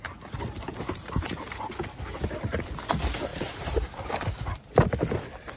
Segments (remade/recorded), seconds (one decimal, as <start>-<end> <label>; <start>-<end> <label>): 0.0-0.7 recorded; 0.7-1.7 remade; 1.7-3.3 recorded; 3.3-4.5 remade; 4.5-5.6 recorded